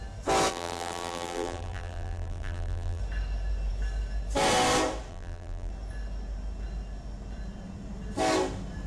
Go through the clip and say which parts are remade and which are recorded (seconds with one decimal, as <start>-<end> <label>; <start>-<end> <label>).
0.0-0.5 recorded; 0.5-3.0 remade; 3.0-5.1 recorded; 5.1-5.7 remade; 5.7-8.9 recorded